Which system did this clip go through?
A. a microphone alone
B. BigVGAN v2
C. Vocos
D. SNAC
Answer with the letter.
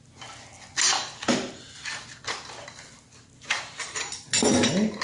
A